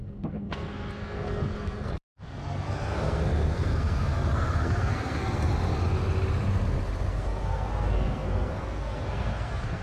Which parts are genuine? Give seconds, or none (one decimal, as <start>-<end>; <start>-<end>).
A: 5.5-7.1